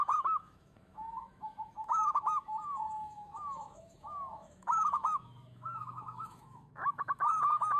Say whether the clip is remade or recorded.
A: remade